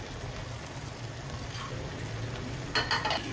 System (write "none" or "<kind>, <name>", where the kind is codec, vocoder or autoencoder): none